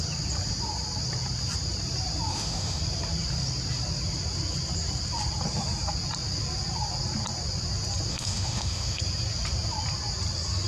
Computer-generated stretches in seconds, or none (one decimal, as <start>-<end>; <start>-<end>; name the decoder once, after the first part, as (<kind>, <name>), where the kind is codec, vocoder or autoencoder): 2.3-2.8 (autoencoder, DAC-VAE); 8.1-9.0